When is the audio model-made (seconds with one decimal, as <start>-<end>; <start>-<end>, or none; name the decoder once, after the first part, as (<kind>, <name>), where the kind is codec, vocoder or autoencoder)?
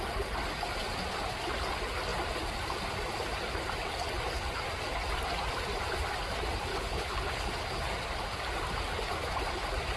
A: 6.7-7.5 (codec, HILCodec)